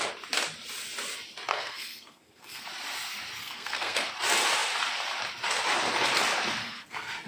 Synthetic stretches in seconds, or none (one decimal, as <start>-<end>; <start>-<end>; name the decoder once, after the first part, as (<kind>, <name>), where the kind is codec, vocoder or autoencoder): 1.5-2.7 (codec, SNAC); 3.4-4.1; 6.6-7.3